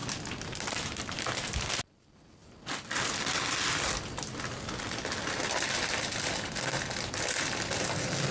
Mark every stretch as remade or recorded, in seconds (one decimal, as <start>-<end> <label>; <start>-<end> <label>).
0.0-8.3 recorded